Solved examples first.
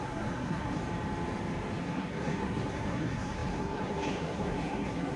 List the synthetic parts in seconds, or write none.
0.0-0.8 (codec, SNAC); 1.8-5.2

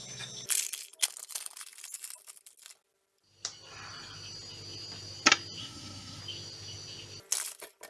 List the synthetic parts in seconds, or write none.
5.6-6.2 (codec, SNAC)